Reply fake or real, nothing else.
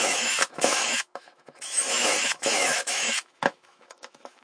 fake